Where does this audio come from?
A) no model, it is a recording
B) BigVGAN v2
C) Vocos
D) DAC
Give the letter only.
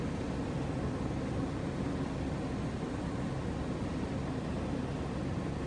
A